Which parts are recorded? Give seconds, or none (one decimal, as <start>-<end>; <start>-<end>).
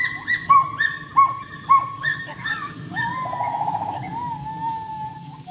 0.0-2.0